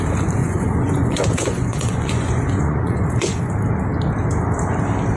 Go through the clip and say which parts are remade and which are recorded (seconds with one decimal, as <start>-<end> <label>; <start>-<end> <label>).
0.0-0.4 recorded; 0.4-3.5 remade; 3.5-5.2 recorded